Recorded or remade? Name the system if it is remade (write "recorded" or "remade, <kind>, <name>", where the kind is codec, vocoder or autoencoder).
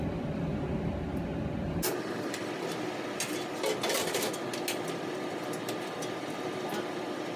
recorded